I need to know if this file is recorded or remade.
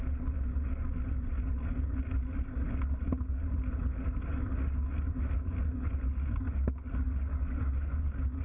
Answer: recorded